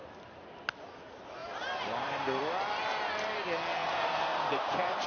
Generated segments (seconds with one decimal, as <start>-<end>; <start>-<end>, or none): 1.4-2.4; 3.8-5.1